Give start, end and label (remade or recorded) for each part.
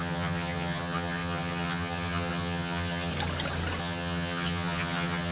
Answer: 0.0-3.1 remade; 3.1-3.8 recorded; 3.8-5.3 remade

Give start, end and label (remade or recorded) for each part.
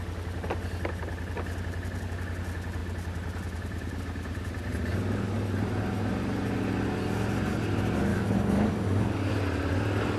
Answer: 0.0-8.1 recorded; 8.1-9.3 remade; 9.3-10.2 recorded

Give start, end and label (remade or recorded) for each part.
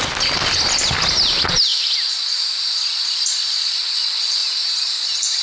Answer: 0.0-4.4 recorded; 4.4-5.4 remade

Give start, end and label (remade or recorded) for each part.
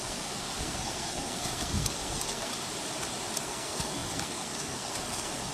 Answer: 0.0-2.5 remade; 2.5-3.4 recorded; 3.4-5.5 remade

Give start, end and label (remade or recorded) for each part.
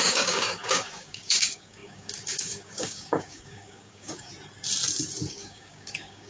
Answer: 0.0-4.3 remade; 4.3-5.3 recorded; 5.3-6.3 remade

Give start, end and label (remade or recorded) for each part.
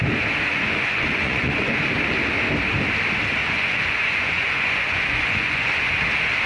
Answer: 0.0-0.5 recorded; 0.5-1.8 remade; 1.8-3.4 recorded; 3.4-5.9 remade; 5.9-6.5 recorded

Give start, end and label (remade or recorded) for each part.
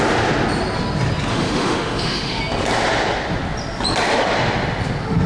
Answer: 0.0-1.3 recorded; 1.3-2.4 remade; 2.4-5.3 recorded